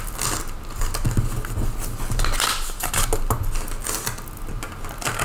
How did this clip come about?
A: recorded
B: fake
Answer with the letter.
A